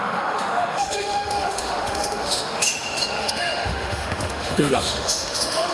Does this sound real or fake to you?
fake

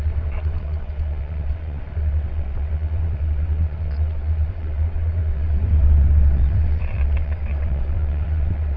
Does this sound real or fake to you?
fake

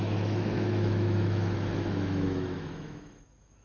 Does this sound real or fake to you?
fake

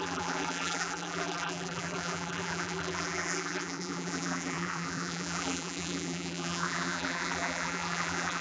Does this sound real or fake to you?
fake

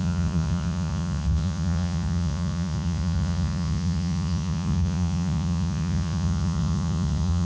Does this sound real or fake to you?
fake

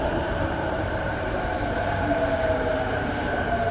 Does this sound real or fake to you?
fake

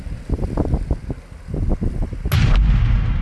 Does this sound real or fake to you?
real